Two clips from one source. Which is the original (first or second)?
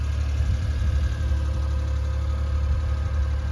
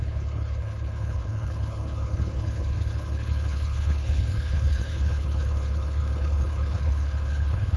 first